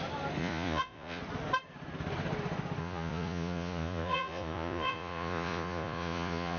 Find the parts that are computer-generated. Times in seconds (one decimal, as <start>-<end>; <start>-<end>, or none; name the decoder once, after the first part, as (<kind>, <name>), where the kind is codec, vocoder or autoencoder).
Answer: 0.4-1.2 (vocoder, Vocos); 2.8-6.6